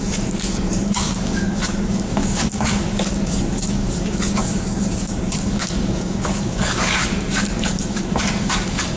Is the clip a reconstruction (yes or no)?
yes